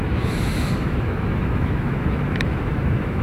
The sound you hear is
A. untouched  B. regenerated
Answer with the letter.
B